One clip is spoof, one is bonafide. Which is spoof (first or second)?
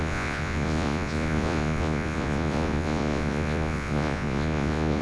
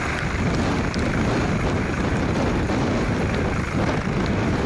first